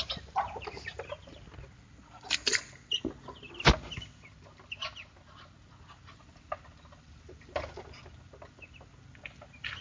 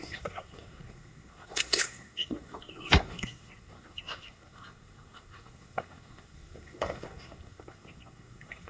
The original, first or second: first